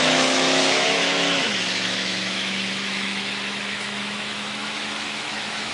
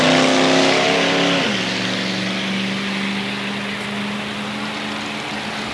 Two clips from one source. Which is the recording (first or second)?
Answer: second